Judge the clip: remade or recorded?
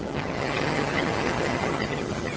remade